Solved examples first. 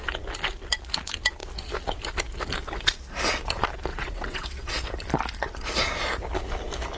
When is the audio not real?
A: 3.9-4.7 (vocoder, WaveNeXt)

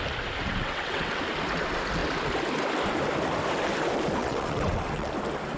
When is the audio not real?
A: 0.4-1.2 (vocoder, WaveNeXt); 4.2-5.1

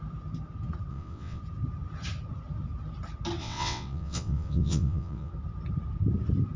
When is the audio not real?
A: 0.9-1.4 (vocoder, WaveNeXt); 3.4-5.3

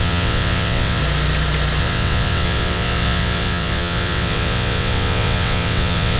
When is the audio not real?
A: 0.0-1.0 (vocoder, WaveNeXt); 1.8-6.2

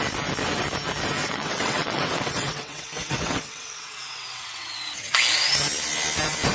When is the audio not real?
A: 1.2-5.1 (vocoder, WaveNeXt)

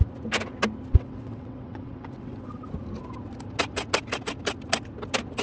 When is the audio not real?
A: 0.9-2.6 (vocoder, WaveNeXt)

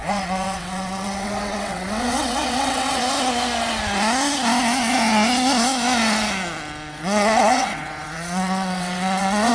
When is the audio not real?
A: 0.0-3.0 (vocoder, WaveNeXt); 6.9-9.5

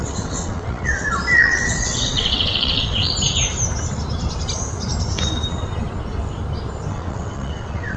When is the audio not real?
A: 0.0-3.1 (vocoder, WaveNeXt); 6.9-8.0